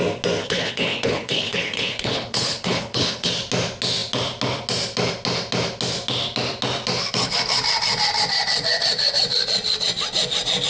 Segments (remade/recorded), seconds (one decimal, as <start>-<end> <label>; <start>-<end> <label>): 0.0-0.4 recorded; 0.4-3.3 remade; 3.3-10.7 recorded